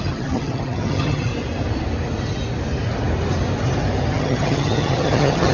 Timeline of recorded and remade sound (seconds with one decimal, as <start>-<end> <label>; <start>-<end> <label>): 0.0-1.3 remade; 1.3-4.1 recorded; 4.1-5.5 remade